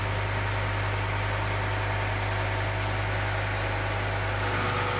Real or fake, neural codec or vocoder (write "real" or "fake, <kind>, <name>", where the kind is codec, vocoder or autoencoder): real